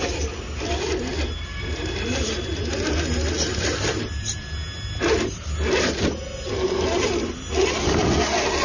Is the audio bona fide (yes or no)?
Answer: yes